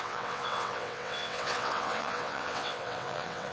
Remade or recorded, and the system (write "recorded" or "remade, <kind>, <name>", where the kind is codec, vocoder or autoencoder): remade, vocoder, WaveNeXt